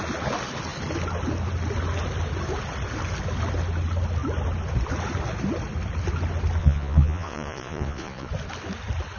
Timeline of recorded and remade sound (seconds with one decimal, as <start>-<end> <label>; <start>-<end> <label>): 0.0-6.6 recorded; 6.6-8.3 remade; 8.3-9.2 recorded